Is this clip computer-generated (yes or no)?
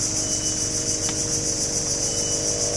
no